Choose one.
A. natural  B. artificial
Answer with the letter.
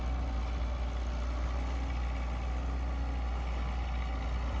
A